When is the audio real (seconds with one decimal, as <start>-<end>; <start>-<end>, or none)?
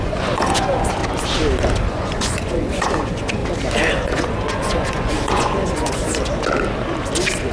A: 1.0-1.9; 3.4-3.9; 6.0-7.5